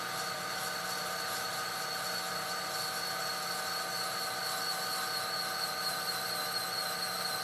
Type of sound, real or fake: real